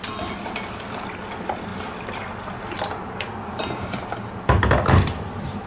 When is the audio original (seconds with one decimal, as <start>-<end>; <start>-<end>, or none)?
0.0-1.7; 4.3-5.7